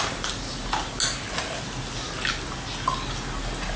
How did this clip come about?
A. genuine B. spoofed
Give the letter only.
A